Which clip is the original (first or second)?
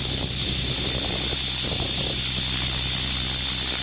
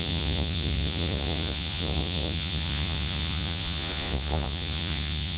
first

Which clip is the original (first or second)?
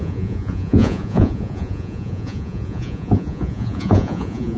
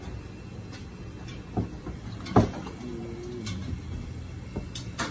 second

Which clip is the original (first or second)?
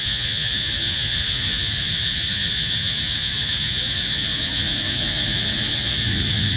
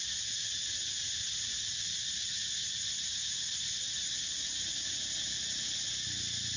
second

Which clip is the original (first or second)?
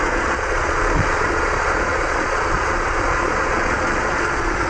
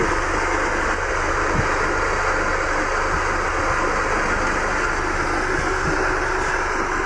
second